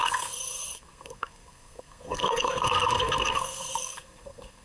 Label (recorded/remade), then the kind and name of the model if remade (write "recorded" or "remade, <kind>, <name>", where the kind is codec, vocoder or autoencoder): remade, codec, SNAC